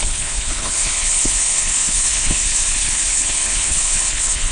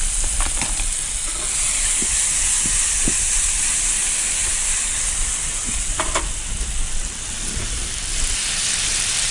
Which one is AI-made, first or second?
first